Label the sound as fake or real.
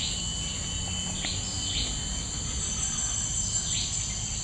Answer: real